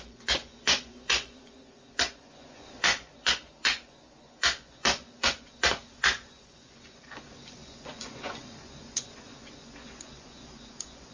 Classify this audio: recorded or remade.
remade